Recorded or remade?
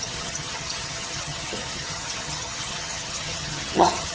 remade